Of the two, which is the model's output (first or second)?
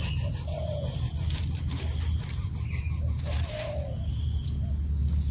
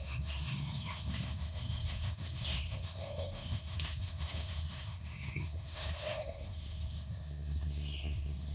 second